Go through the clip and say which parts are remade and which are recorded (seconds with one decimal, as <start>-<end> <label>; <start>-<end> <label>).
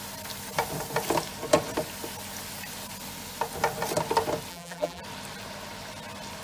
0.0-4.5 recorded; 4.5-5.0 remade; 5.0-6.4 recorded